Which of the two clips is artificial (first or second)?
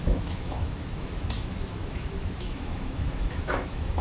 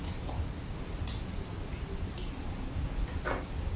first